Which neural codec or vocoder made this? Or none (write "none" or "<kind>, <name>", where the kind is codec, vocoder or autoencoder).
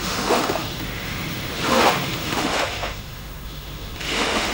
autoencoder, DAC-VAE